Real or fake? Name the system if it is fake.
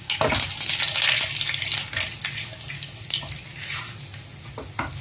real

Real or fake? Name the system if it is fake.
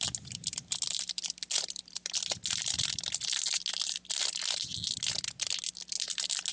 real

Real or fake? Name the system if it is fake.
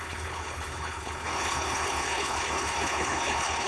fake, codec, HILCodec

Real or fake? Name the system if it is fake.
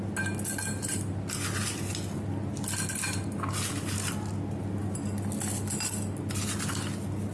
real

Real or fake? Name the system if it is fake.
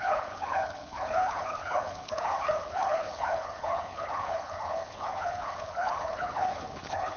fake, codec, HILCodec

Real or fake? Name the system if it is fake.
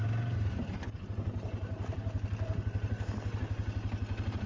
real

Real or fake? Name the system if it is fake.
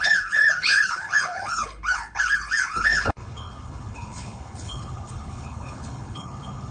fake, codec, HILCodec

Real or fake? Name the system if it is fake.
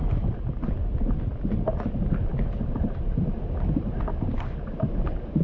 real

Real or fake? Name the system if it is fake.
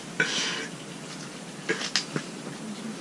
real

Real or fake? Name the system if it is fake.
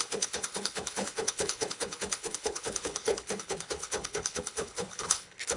fake, codec, HILCodec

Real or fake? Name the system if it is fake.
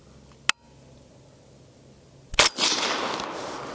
real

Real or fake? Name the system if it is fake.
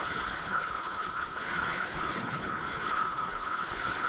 fake, codec, HILCodec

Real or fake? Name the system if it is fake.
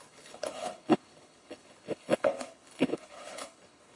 fake, codec, HILCodec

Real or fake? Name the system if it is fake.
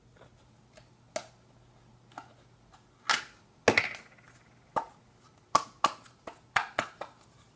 real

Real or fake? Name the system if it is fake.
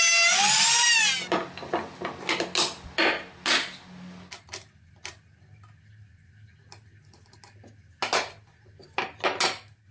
real